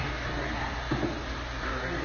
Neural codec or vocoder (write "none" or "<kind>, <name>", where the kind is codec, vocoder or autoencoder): none